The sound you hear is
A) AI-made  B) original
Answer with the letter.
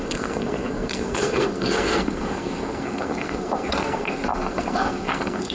A